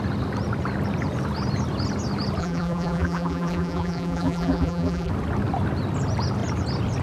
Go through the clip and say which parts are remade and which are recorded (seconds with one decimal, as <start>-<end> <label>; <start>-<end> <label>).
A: 0.0-2.4 recorded; 2.4-5.1 remade; 5.1-7.0 recorded